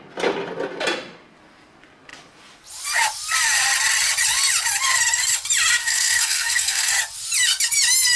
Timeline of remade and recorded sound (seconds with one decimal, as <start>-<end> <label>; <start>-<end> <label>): 0.0-5.8 recorded; 5.8-6.9 remade; 6.9-8.2 recorded